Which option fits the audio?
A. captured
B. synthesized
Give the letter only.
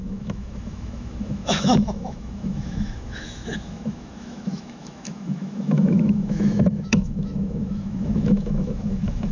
B